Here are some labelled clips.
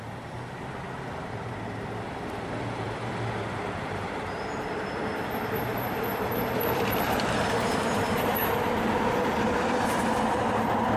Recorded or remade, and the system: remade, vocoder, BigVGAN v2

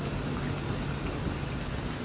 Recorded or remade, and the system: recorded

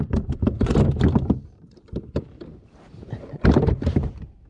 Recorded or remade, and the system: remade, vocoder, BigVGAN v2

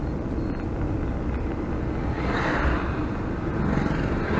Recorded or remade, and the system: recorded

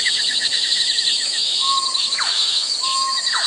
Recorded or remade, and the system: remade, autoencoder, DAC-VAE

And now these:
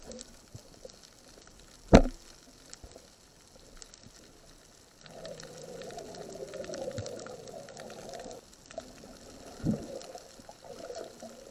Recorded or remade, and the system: recorded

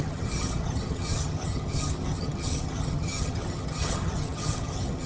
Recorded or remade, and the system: remade, vocoder, HiFi-GAN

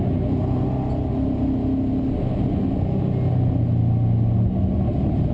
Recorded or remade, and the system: recorded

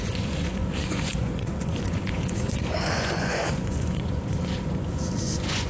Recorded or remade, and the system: remade, vocoder, Vocos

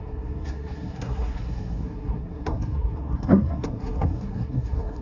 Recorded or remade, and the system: remade, codec, SNAC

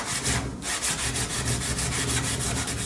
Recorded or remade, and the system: recorded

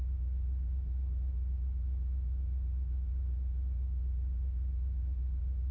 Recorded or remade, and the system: recorded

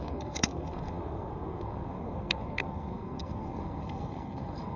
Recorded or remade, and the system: remade, codec, SNAC